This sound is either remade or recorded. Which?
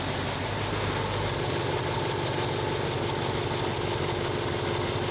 recorded